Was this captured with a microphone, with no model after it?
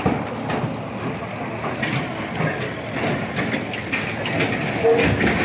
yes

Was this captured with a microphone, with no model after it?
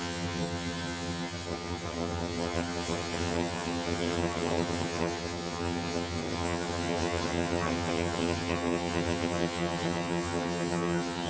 no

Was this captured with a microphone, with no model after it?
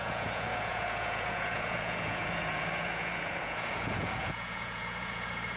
no